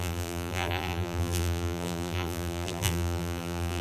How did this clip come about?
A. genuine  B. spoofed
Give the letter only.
B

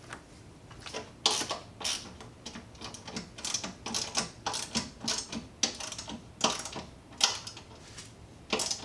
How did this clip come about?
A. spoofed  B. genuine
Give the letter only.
B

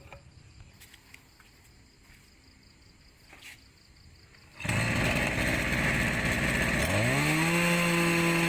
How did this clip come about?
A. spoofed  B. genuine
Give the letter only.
B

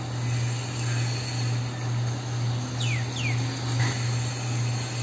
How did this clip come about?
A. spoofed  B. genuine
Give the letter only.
B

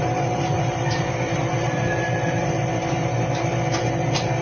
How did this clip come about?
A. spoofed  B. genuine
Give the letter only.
A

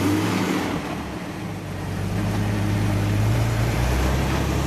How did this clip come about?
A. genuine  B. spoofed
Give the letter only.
B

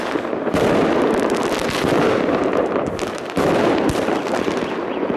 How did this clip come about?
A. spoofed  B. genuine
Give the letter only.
B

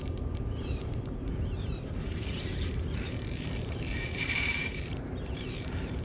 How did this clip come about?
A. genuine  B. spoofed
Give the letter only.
B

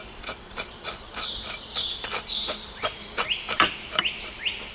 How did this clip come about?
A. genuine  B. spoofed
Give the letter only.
B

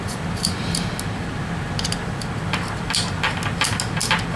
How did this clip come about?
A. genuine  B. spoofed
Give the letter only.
A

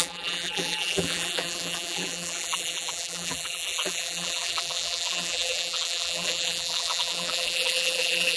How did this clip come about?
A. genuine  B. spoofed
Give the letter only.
B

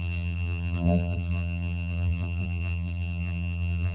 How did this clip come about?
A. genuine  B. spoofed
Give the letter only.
B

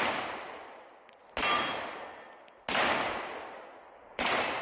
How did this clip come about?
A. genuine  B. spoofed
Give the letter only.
A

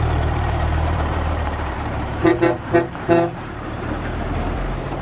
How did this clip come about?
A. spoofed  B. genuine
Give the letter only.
A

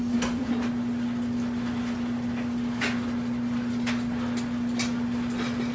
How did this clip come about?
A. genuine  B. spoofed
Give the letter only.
A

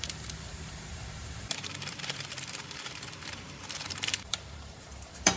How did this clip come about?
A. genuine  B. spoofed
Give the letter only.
B